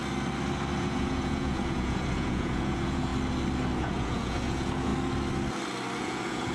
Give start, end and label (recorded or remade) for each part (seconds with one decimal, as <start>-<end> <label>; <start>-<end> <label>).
0.0-0.8 recorded; 0.8-3.1 remade; 3.1-3.8 recorded; 3.8-4.9 remade; 4.9-6.0 recorded; 6.0-6.5 remade